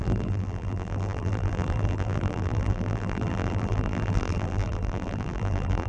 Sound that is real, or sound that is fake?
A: fake